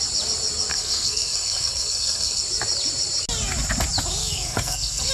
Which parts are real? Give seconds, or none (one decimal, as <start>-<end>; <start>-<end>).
0.0-0.7; 2.4-4.2

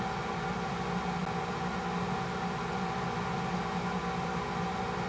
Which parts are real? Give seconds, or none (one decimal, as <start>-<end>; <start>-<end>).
0.0-5.1

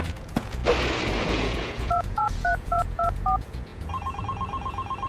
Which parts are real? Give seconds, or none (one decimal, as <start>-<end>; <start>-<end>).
0.6-1.2

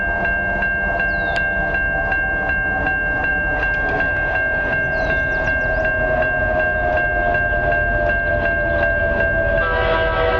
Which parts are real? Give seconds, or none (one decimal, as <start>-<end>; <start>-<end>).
0.0-10.4

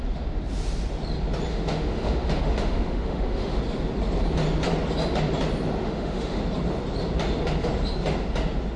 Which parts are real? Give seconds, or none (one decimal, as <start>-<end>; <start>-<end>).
0.0-1.5; 3.6-5.8; 6.4-8.8